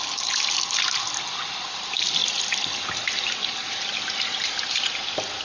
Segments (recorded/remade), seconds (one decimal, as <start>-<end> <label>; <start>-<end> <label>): 0.0-5.4 recorded